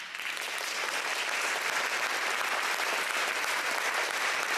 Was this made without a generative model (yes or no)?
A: no